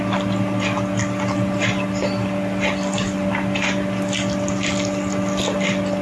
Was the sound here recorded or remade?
recorded